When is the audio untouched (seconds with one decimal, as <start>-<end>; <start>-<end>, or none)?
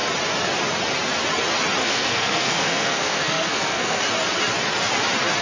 0.0-1.8; 4.0-5.4